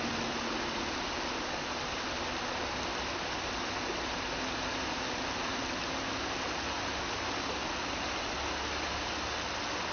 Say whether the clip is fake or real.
real